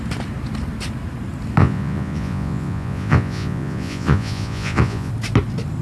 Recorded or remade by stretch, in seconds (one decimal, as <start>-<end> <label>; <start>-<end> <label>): 0.0-1.6 recorded; 1.6-5.1 remade; 5.1-5.8 recorded

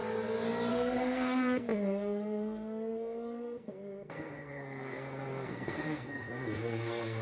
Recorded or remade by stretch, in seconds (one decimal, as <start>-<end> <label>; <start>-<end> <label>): 0.0-0.7 recorded; 0.7-7.2 remade

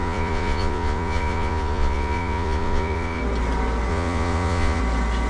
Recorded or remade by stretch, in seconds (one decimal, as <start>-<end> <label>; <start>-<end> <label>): 0.0-3.2 remade; 3.2-3.9 recorded; 3.9-4.8 remade; 4.8-5.3 recorded

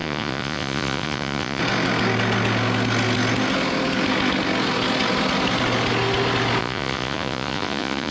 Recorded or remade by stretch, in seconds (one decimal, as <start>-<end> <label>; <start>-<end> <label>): 0.0-1.6 remade; 1.6-6.6 recorded; 6.6-8.1 remade